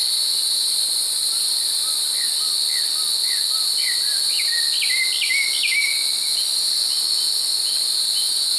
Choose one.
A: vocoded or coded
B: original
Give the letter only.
A